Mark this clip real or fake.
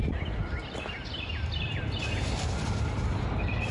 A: real